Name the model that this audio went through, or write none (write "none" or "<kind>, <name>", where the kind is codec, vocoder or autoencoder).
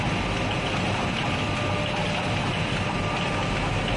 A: none